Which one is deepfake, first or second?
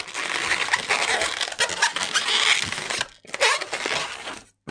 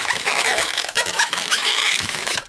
second